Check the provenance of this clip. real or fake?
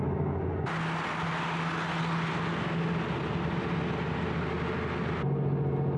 real